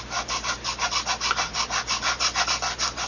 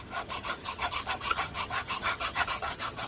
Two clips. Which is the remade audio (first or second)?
second